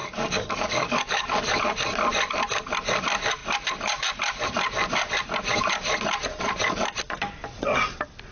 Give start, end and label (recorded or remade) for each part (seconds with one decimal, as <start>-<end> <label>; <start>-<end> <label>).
0.0-1.6 remade; 1.6-8.3 recorded